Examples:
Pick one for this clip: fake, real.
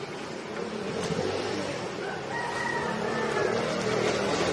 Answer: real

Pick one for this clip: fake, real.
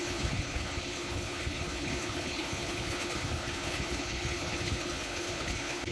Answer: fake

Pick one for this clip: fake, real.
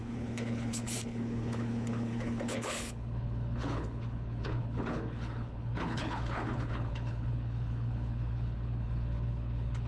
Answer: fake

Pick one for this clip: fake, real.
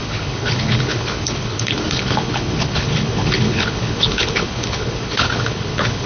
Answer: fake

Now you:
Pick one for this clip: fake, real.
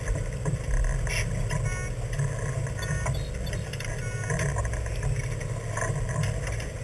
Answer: real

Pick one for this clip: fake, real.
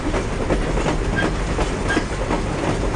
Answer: real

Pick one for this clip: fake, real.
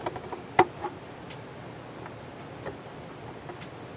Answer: real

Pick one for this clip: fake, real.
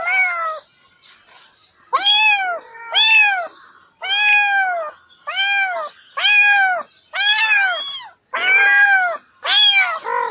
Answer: real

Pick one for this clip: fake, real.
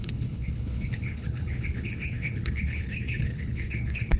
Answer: fake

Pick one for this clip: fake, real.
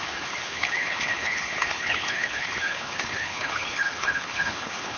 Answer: fake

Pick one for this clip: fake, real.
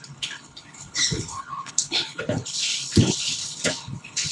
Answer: fake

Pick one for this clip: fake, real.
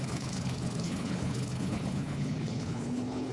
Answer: fake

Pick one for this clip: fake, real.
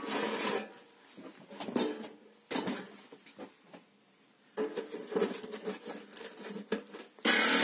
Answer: real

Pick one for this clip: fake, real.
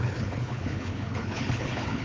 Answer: fake